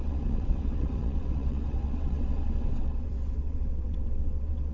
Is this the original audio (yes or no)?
no